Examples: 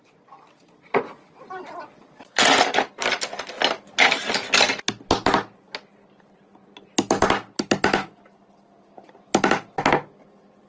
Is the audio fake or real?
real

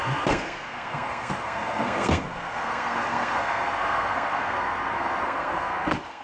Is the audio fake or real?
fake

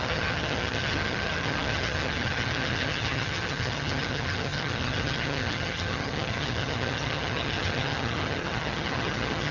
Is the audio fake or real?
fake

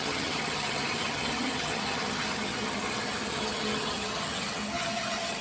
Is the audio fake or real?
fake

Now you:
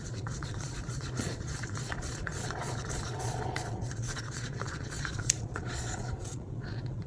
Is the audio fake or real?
fake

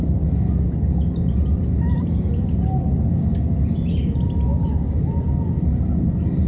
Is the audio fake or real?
real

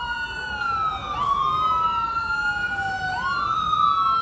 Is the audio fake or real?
real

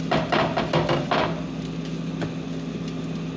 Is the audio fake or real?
real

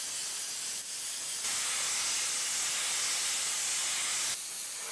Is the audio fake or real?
real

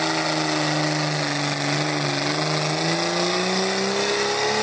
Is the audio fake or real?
real